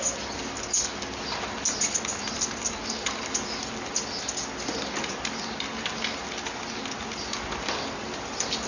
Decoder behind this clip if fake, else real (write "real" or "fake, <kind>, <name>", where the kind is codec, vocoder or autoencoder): real